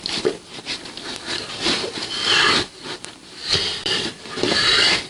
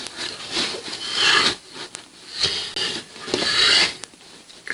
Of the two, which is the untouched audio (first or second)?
second